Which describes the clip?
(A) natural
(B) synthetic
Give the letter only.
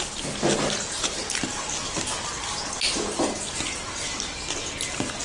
A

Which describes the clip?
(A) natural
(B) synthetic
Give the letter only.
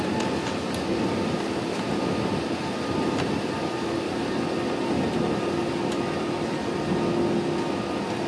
A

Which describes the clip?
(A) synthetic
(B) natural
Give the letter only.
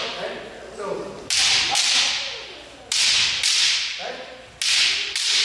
B